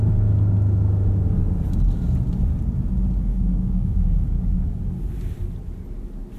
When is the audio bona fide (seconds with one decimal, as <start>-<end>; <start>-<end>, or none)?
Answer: 0.0-3.3; 4.8-6.4